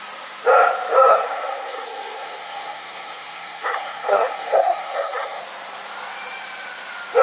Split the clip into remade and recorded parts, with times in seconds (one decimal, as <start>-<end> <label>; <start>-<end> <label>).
0.0-1.1 recorded; 1.1-5.4 remade; 5.4-7.2 recorded